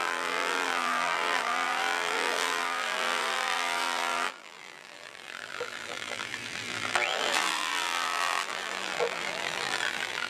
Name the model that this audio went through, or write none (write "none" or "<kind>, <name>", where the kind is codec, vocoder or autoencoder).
vocoder, BigVGAN v2